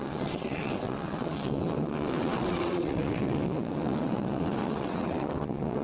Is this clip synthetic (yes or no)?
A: yes